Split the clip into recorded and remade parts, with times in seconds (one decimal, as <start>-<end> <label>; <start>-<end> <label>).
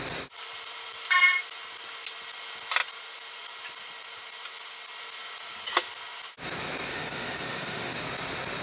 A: 0.0-6.9 recorded; 6.9-8.0 remade; 8.0-8.6 recorded